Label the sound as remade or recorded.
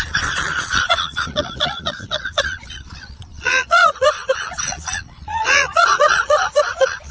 remade